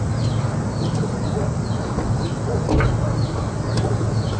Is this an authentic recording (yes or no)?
yes